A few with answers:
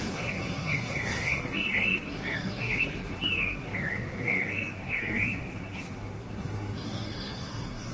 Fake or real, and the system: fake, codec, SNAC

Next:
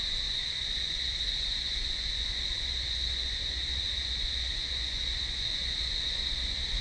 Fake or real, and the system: fake, vocoder, Vocos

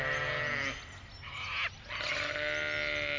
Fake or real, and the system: real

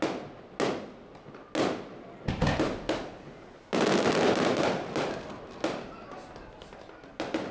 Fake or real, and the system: real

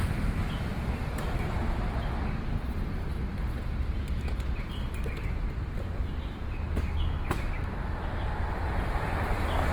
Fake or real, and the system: real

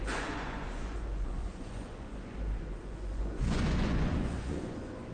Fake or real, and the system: fake, vocoder, Vocos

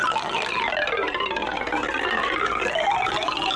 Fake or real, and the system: real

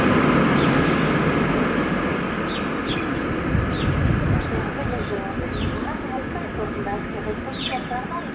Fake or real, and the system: real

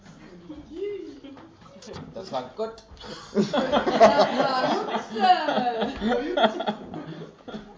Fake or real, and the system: real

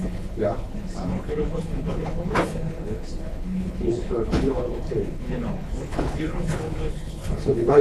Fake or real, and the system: fake, codec, HILCodec